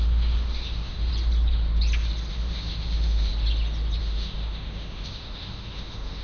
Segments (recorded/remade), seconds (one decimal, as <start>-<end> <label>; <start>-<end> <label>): 0.0-1.1 remade; 1.1-2.3 recorded; 2.3-3.3 remade; 3.3-4.0 recorded; 4.0-6.2 remade